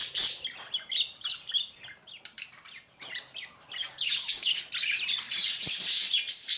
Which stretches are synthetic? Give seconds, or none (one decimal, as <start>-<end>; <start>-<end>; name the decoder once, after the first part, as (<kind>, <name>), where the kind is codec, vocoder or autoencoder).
3.9-4.6 (codec, DAC)